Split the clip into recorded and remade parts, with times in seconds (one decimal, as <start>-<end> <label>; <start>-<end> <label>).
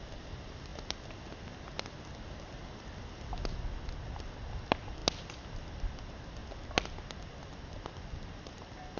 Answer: 0.0-9.0 recorded